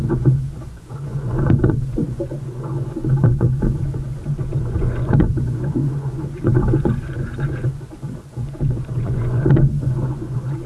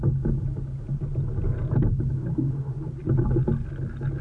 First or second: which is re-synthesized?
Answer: first